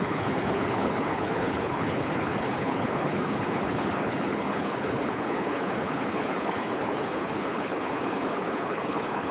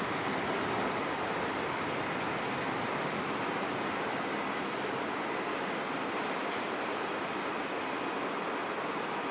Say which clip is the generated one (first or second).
first